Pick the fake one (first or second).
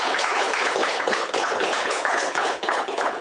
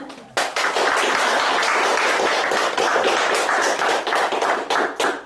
first